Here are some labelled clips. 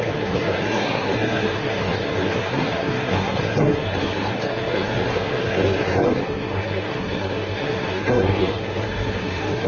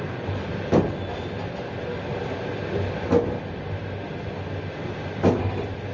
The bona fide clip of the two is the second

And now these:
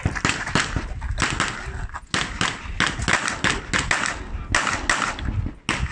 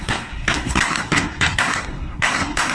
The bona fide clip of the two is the first